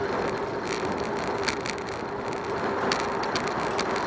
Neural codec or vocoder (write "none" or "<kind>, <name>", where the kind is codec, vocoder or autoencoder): none